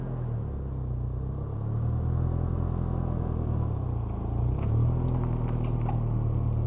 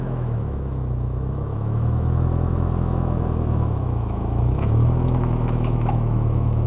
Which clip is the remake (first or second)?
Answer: second